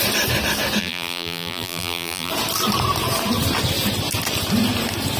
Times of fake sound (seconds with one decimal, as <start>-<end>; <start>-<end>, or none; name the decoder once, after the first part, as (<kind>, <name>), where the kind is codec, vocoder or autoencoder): 0.8-2.3 (vocoder, BigVGAN v2)